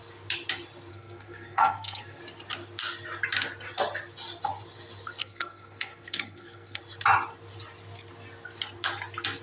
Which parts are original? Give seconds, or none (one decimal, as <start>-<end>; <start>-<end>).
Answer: 0.0-0.9; 2.2-5.2; 6.8-9.4

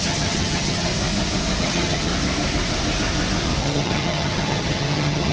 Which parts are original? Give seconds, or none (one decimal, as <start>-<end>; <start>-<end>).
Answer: 0.9-1.6; 2.1-3.6